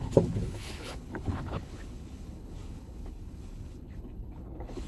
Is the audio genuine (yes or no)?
no